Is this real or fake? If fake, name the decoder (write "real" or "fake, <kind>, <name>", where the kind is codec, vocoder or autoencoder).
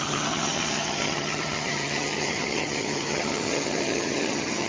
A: fake, vocoder, HiFi-GAN